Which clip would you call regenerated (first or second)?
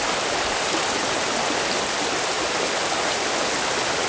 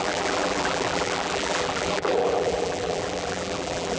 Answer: second